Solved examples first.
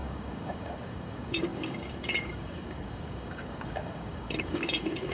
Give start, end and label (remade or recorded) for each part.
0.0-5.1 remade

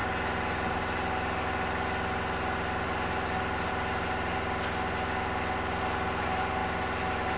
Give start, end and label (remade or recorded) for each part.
0.0-7.4 recorded

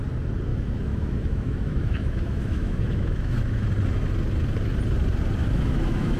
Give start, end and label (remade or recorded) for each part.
0.0-0.5 recorded; 0.5-3.7 remade; 3.7-5.4 recorded; 5.4-6.2 remade